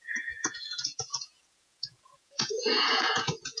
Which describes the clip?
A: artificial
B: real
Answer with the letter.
A